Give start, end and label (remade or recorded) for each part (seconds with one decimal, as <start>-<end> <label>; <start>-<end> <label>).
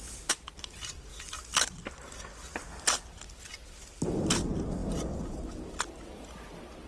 0.0-6.9 recorded